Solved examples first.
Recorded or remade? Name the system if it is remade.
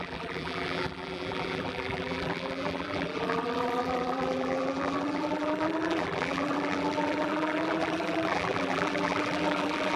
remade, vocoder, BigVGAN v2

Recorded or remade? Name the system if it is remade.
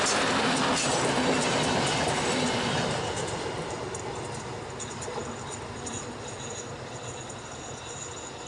recorded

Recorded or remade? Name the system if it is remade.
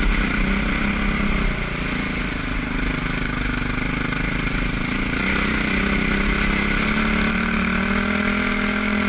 recorded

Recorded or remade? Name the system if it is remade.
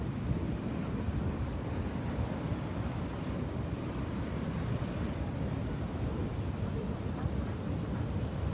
remade, vocoder, BigVGAN v2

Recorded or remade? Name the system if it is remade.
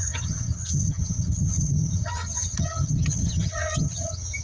remade, vocoder, HiFi-GAN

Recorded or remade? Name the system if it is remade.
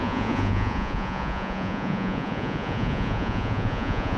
remade, vocoder, Vocos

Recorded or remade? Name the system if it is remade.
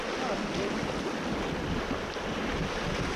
recorded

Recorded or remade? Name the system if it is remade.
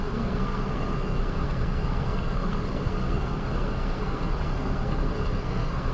remade, codec, SNAC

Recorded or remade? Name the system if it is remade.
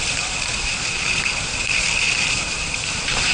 remade, vocoder, BigVGAN v2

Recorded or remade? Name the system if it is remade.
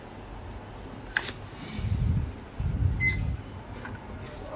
recorded